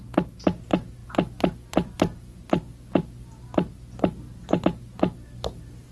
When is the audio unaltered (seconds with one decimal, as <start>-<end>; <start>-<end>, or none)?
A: 0.0-5.9